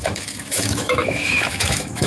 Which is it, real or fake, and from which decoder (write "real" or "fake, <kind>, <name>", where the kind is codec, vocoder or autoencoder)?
fake, autoencoder, DAC-VAE